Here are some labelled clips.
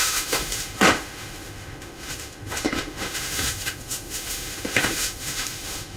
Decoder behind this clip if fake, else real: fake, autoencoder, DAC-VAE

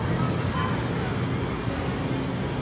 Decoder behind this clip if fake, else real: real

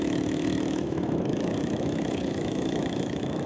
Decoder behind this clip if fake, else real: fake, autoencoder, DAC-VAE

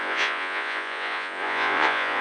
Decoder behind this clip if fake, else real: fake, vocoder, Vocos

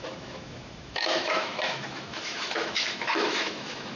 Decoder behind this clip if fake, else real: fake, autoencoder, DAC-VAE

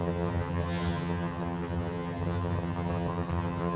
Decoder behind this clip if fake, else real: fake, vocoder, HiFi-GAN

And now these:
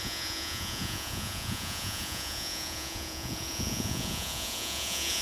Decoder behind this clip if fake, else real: fake, vocoder, Vocos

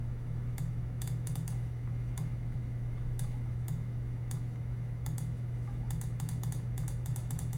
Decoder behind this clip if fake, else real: fake, autoencoder, DAC-VAE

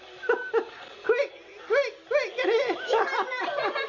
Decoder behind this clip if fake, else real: real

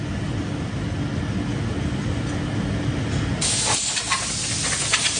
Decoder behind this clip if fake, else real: real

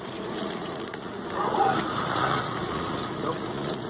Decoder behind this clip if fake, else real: fake, vocoder, Vocos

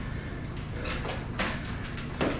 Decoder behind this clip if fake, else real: real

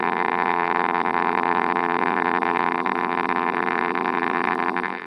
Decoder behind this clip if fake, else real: fake, vocoder, BigVGAN v2